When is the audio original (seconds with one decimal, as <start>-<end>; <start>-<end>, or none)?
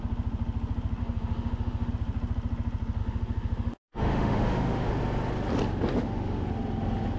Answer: 0.0-1.0; 1.9-3.0; 4.9-5.9; 6.5-7.2